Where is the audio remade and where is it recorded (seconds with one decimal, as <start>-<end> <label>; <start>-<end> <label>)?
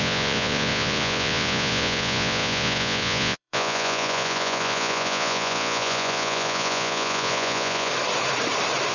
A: 0.0-7.9 remade; 7.9-8.9 recorded